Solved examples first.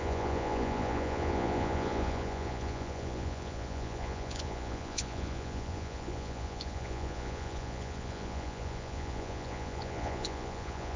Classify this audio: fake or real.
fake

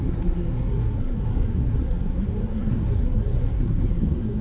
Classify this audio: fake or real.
fake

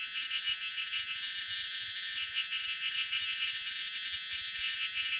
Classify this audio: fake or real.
fake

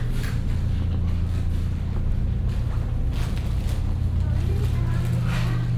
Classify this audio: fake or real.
real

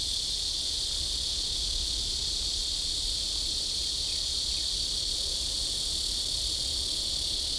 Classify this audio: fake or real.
real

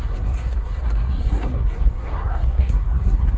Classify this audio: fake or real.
fake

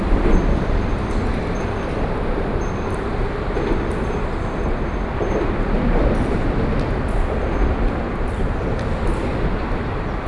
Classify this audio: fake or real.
fake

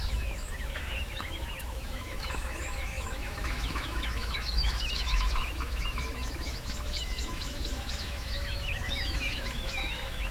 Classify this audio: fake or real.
fake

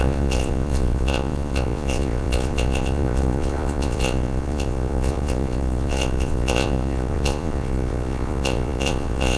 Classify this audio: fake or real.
fake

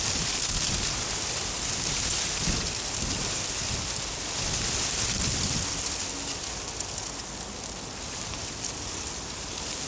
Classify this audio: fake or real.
real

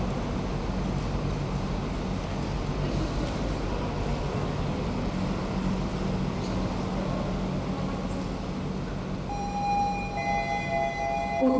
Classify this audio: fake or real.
real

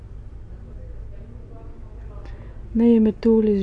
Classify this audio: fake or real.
real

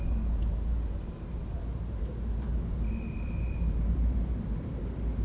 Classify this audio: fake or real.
fake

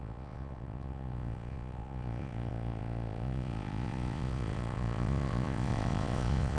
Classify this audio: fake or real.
fake